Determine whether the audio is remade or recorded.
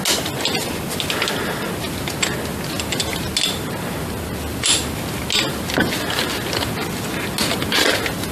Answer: recorded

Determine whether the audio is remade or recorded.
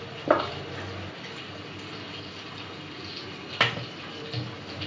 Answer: recorded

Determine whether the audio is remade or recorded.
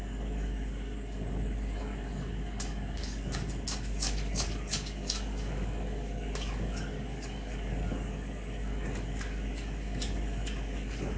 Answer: remade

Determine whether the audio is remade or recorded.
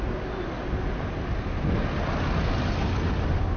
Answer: recorded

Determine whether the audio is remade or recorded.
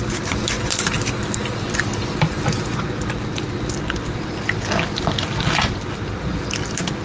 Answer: recorded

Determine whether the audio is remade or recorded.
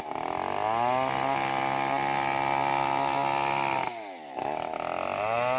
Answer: recorded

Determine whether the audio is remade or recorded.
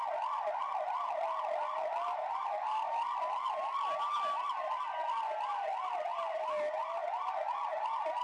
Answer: recorded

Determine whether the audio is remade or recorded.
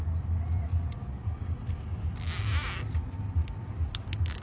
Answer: recorded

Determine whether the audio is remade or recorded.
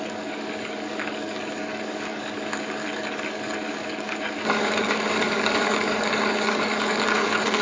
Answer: remade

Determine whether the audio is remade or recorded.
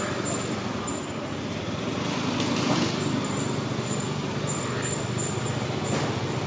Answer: recorded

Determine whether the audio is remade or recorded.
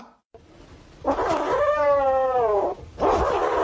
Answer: recorded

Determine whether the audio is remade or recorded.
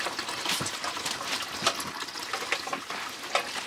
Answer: recorded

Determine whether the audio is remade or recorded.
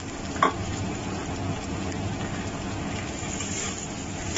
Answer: recorded